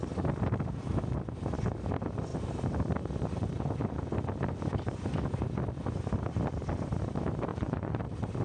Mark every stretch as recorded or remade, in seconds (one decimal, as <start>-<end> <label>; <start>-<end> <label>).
0.0-7.5 recorded; 7.5-8.0 remade; 8.0-8.4 recorded

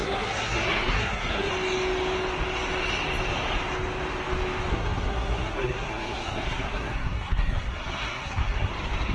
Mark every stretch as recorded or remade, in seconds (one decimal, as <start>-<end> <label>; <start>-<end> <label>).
0.0-1.5 remade; 1.5-4.7 recorded; 4.7-8.7 remade; 8.7-9.1 recorded

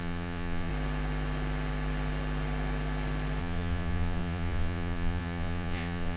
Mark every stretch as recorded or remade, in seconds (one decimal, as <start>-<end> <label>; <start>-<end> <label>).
0.0-0.7 remade; 0.7-3.4 recorded; 3.4-6.2 remade

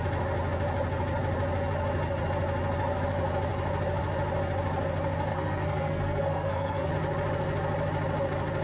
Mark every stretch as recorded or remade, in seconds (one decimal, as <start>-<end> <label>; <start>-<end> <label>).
0.0-5.3 recorded; 5.3-6.9 remade; 6.9-8.6 recorded

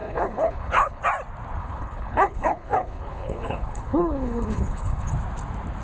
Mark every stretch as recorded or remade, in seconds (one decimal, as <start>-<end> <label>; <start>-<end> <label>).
0.0-1.0 remade; 1.0-1.6 recorded; 1.6-5.1 remade; 5.1-5.8 recorded

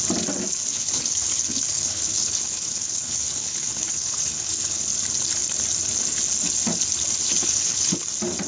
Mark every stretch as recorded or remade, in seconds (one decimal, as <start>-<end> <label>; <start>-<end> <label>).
0.0-0.7 recorded; 0.7-4.8 remade; 4.8-7.2 recorded; 7.2-8.0 remade; 8.0-8.5 recorded

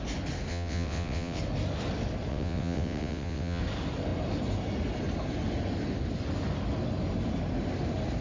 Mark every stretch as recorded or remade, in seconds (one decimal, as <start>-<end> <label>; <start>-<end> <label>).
0.0-0.5 recorded; 0.5-1.4 remade; 1.4-2.3 recorded; 2.3-3.6 remade; 3.6-8.2 recorded